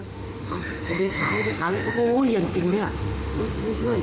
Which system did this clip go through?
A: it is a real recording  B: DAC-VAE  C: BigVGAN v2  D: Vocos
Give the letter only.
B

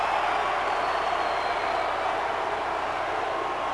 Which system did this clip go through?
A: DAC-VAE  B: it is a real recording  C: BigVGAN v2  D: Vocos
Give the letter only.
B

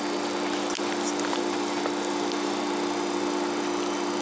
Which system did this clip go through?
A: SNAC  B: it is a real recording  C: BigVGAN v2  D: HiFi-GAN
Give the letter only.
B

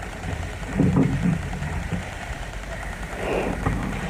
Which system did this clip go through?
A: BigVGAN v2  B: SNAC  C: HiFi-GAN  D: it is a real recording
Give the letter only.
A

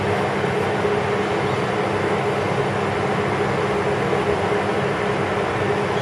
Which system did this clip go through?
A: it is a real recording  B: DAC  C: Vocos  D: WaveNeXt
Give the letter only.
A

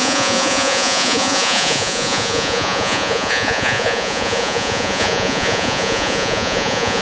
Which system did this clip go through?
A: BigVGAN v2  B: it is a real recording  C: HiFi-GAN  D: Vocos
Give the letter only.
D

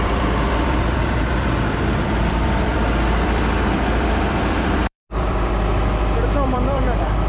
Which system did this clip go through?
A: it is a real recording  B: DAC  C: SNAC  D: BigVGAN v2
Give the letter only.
D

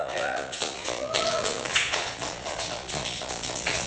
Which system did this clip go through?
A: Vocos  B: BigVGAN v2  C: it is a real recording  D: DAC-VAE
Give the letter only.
A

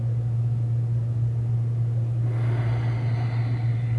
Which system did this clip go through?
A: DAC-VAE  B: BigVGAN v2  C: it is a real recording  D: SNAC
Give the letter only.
C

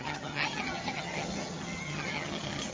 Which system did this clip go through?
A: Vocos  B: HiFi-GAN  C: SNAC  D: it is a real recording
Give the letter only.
B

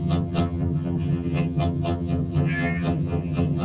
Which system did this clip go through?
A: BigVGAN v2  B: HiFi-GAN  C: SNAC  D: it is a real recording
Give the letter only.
B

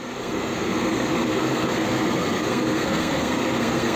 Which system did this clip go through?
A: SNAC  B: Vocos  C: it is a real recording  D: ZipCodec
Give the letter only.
A